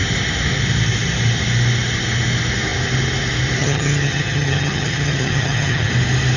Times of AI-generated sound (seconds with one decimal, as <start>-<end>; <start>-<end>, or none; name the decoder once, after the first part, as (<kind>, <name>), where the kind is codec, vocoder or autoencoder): 3.6-5.9 (vocoder, HiFi-GAN)